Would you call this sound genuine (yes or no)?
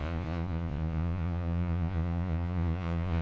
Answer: no